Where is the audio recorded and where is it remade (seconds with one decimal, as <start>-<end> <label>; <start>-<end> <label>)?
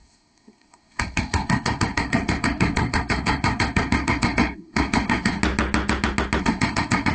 0.0-5.4 remade; 5.4-6.4 recorded; 6.4-7.1 remade